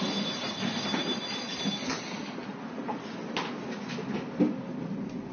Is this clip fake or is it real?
real